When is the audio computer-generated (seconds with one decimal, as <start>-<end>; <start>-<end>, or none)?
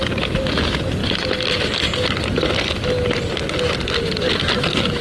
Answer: none